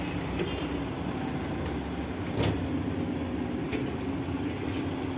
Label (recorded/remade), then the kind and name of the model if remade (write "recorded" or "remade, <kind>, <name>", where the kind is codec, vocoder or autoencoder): recorded